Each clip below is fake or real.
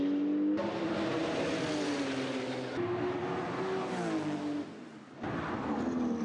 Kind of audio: real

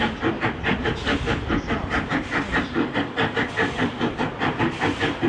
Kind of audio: real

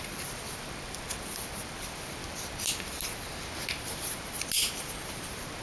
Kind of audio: real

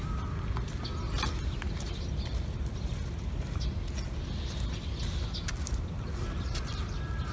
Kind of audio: real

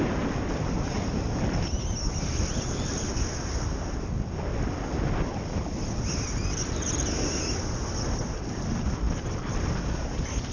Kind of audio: real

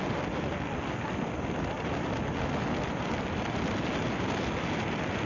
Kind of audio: real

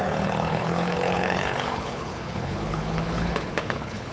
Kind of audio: fake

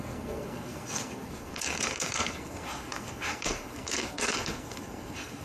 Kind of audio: fake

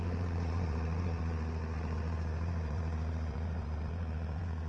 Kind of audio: fake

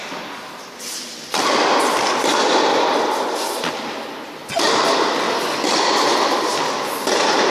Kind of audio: real